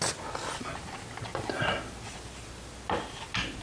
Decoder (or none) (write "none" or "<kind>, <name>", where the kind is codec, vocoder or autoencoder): none